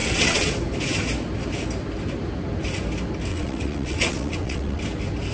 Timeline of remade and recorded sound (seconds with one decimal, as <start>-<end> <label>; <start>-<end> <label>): 0.0-0.5 remade; 0.5-3.3 recorded; 3.3-4.8 remade; 4.8-5.3 recorded